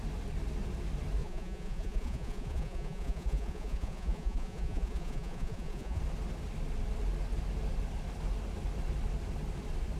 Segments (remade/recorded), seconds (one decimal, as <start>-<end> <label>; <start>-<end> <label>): 0.0-1.2 recorded; 1.2-6.0 remade; 6.0-10.0 recorded